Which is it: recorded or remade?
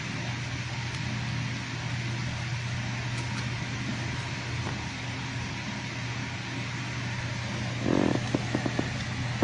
recorded